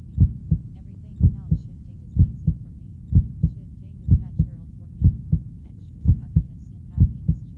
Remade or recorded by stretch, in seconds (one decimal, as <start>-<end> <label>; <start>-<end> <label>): 0.0-5.6 recorded; 5.6-6.5 remade; 6.5-7.6 recorded

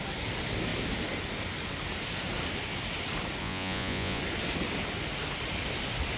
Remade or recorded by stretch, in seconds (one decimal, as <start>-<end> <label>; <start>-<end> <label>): 0.0-3.4 recorded; 3.4-4.2 remade; 4.2-6.2 recorded

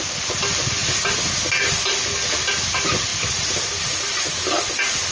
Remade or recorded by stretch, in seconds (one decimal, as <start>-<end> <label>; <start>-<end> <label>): 0.0-5.1 recorded

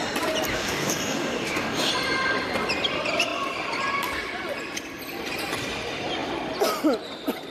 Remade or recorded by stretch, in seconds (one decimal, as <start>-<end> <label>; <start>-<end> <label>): 0.0-0.5 recorded; 0.5-1.9 remade; 1.9-7.5 recorded

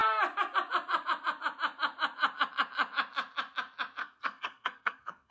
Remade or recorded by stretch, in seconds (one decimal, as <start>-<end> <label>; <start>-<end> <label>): 0.0-4.0 recorded; 4.0-5.3 remade